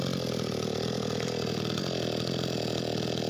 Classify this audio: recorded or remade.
recorded